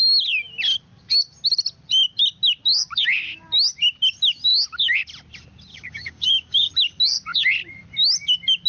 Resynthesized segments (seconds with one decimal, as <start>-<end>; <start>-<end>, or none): 5.7-6.7